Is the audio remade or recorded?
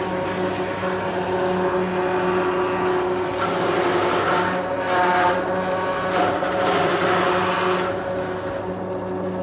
recorded